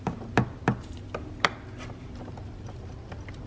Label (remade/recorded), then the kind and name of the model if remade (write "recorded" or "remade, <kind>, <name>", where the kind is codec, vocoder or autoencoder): recorded